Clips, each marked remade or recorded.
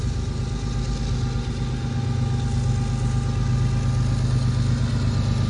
recorded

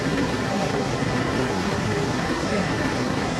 remade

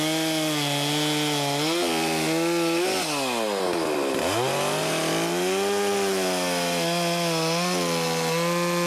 recorded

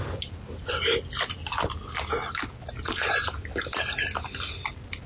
recorded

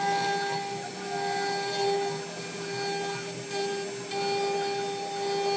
recorded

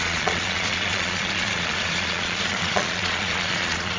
remade